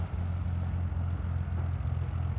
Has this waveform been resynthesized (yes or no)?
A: no